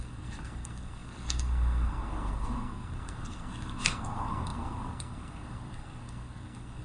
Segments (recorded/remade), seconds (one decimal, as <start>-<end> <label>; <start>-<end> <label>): 0.0-6.8 remade